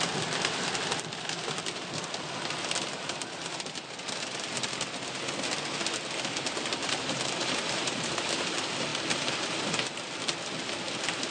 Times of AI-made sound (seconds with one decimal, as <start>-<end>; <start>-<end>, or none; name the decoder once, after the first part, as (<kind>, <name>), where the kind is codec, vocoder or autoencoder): 6.8-8.1 (vocoder, BigVGAN v2)